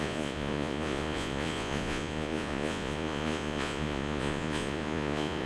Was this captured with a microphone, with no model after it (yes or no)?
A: no